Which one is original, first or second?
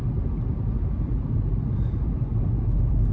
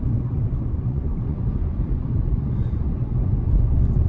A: first